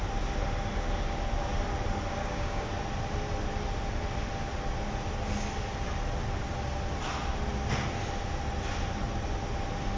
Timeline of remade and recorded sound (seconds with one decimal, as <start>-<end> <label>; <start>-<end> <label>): 0.0-2.2 recorded; 2.2-2.7 remade; 2.7-10.0 recorded